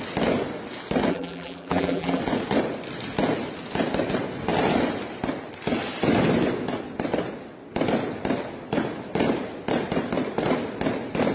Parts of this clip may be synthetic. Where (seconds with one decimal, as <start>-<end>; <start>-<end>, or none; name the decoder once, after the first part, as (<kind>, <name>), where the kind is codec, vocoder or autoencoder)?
1.1-2.2 (vocoder, BigVGAN v2)